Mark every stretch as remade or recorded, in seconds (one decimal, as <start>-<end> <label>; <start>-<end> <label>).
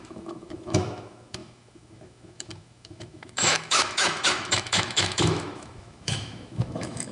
0.0-7.1 remade